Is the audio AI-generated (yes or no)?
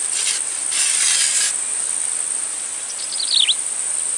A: no